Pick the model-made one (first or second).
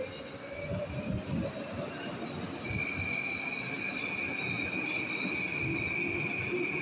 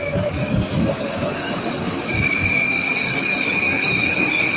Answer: second